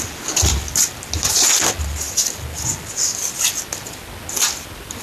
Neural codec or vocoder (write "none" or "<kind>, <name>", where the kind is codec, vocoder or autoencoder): none